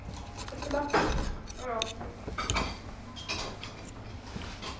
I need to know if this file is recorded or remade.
recorded